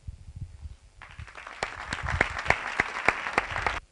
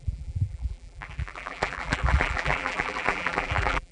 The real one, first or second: first